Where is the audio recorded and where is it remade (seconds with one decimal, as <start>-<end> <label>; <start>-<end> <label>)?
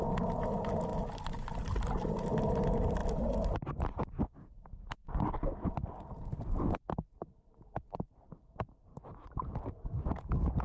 0.0-10.6 recorded